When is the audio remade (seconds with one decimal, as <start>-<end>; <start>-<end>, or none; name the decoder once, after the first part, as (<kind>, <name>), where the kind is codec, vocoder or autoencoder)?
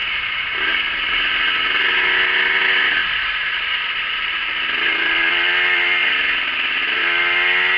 0.0-0.7 (vocoder, BigVGAN v2); 3.0-3.8